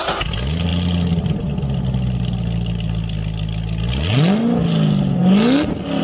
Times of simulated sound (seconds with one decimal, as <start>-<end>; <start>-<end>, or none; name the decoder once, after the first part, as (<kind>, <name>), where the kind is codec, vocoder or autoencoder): none